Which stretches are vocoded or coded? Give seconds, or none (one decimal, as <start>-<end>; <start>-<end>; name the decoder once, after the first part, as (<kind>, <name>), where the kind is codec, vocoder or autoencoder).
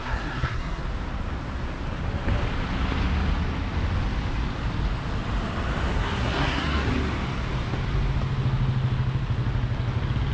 0.0-0.8 (codec, SNAC); 5.9-6.9